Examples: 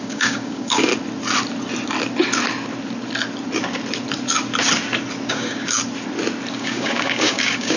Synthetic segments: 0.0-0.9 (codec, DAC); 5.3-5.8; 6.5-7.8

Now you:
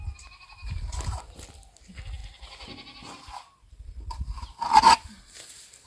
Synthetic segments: none

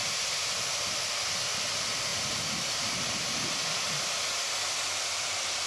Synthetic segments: none

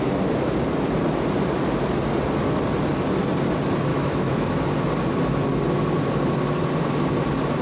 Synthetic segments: 3.9-4.6 (autoencoder, DAC-VAE)

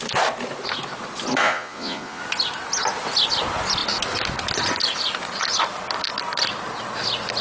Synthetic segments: 1.4-2.2 (vocoder, Vocos)

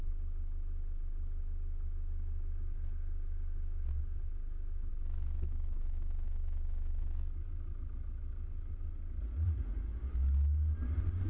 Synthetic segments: 9.2-9.8 (vocoder, Vocos)

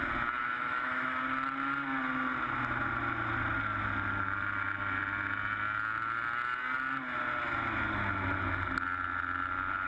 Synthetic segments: 0.4-1.2 (autoencoder, DAC-VAE)

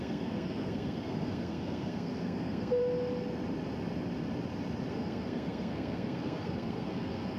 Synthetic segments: 0.0-2.8 (codec, SNAC); 4.9-7.4